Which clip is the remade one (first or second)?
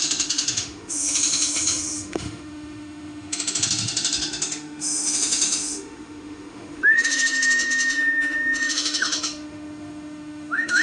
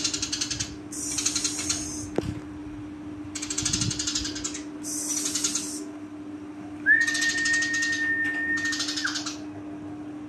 first